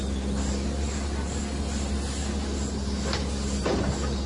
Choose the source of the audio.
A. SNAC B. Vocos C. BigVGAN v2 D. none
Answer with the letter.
D